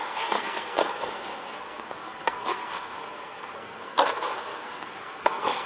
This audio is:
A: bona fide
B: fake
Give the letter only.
B